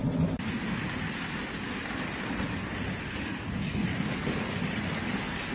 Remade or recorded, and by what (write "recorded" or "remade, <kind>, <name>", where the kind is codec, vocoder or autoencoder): recorded